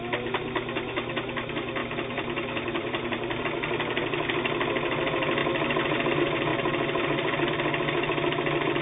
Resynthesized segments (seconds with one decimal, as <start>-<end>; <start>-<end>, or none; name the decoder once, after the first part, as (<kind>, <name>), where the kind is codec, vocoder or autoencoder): 1.8-3.4 (vocoder, BigVGAN v2); 6.5-7.5